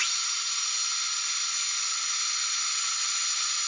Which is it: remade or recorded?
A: recorded